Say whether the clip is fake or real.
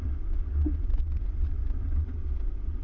fake